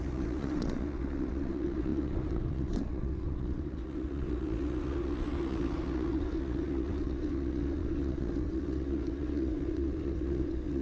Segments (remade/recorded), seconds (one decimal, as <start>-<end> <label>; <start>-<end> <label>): 0.0-10.8 remade

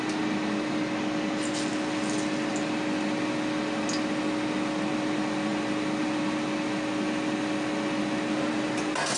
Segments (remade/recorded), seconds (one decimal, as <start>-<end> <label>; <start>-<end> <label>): 0.0-9.2 recorded

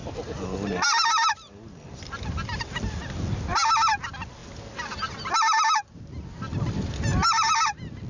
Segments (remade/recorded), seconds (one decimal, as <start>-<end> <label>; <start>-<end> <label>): 0.0-8.1 recorded